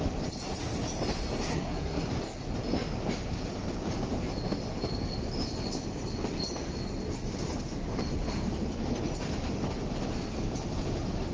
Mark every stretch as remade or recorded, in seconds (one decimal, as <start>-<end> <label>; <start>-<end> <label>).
0.0-1.5 recorded; 1.5-2.1 remade; 2.1-11.3 recorded